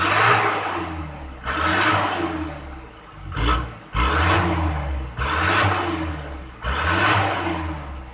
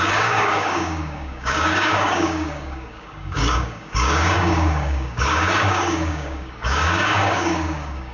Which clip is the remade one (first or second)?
second